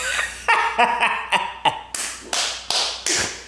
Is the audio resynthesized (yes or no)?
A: no